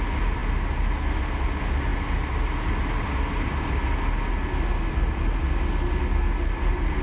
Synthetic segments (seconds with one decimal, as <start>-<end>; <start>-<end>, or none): none